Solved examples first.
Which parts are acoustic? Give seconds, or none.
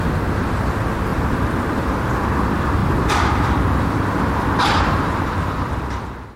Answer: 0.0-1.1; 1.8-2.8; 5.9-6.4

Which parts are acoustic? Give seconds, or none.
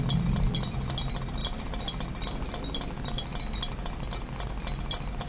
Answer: 0.0-5.3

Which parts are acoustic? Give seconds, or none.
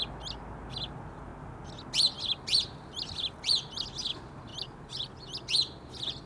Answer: 0.0-6.3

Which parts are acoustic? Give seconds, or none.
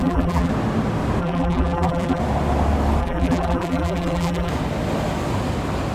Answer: 0.5-1.2; 2.2-3.0; 4.5-5.9